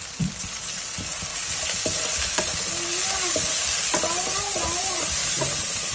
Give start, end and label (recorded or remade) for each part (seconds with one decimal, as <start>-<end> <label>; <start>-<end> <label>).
0.0-1.3 remade; 1.3-4.8 recorded; 4.8-5.9 remade